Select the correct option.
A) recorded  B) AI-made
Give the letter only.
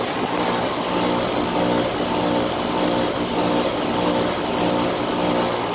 A